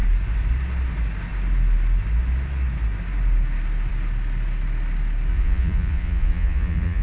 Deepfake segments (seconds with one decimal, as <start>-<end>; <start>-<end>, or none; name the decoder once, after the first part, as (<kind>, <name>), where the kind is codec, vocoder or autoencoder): 5.3-7.0 (vocoder, Vocos)